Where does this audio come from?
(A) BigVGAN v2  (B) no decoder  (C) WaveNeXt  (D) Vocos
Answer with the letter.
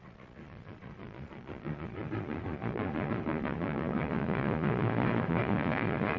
D